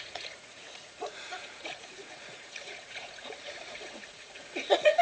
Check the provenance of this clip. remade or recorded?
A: remade